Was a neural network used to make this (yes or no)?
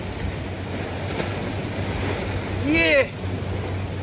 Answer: no